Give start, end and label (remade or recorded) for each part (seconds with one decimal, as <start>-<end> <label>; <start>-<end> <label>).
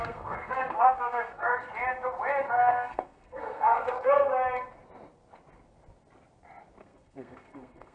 0.0-1.5 remade; 1.5-2.5 recorded; 2.5-4.3 remade; 4.3-6.8 recorded; 6.8-7.9 remade